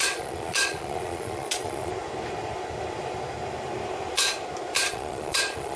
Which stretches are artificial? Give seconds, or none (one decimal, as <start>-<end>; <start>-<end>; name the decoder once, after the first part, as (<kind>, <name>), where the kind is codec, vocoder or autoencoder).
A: 0.0-1.9 (vocoder, Vocos); 4.8-5.8

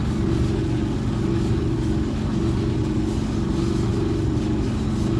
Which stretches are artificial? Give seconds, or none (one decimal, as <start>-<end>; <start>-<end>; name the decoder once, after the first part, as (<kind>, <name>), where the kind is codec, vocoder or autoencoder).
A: none

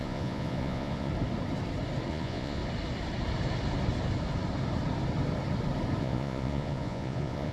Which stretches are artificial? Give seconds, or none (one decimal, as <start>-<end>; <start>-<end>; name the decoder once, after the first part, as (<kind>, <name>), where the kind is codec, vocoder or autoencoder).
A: 0.0-1.1 (vocoder, Vocos); 2.1-2.6; 6.0-7.5